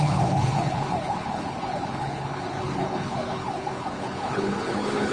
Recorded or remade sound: remade